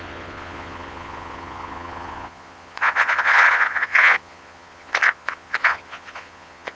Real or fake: fake